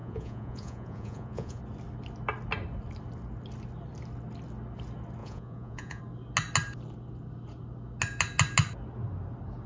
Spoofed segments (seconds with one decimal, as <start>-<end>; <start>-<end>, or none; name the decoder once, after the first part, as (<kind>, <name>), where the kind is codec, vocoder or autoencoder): 0.0-1.6 (vocoder, Vocos); 5.2-6.0